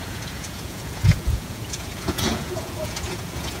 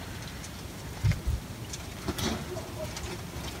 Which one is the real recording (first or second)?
second